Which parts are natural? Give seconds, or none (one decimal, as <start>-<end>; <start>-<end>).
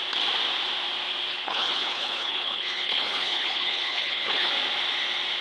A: 0.0-1.3; 4.5-5.4